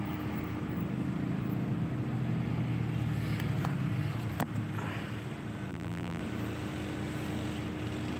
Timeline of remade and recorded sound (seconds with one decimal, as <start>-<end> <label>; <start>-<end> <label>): 0.0-5.7 recorded; 5.7-6.2 remade; 6.2-8.2 recorded